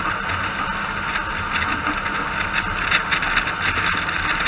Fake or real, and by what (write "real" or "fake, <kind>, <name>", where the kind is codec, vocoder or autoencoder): real